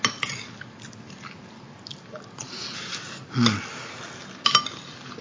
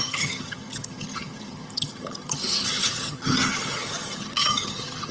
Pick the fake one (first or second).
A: second